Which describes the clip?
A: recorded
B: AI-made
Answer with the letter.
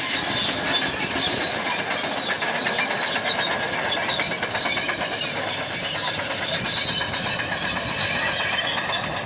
A